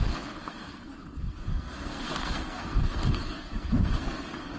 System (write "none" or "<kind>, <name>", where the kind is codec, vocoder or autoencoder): codec, SNAC